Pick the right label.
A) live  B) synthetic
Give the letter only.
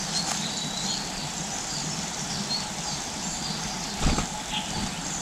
A